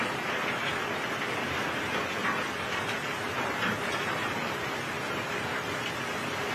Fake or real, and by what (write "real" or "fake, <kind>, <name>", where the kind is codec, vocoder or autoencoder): real